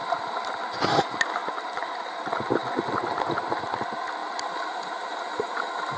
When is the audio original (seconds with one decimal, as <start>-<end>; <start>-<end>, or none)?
0.0-6.0